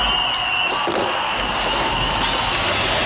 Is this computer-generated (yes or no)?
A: no